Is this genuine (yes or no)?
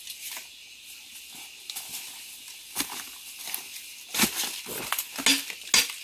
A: yes